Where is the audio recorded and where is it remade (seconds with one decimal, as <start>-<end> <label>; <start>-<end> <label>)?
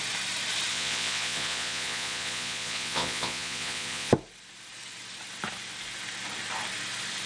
0.0-0.7 recorded; 0.7-4.1 remade; 4.1-7.3 recorded